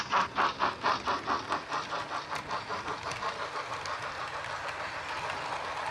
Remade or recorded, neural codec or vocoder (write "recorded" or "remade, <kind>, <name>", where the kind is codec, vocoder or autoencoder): recorded